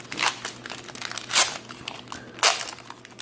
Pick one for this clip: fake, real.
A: real